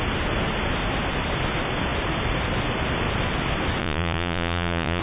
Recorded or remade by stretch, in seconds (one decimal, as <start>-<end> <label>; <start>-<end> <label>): 0.0-3.8 recorded; 3.8-5.0 remade